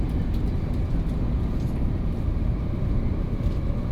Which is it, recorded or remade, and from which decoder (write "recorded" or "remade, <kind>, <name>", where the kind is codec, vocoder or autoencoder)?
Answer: remade, vocoder, BigVGAN v2